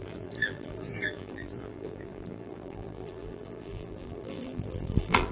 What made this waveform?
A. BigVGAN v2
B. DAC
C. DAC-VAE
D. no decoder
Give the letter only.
A